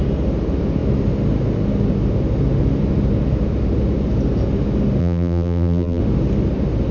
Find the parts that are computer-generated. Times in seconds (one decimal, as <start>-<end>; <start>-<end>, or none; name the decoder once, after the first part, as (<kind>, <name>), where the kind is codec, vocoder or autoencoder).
5.0-6.0 (vocoder, BigVGAN v2)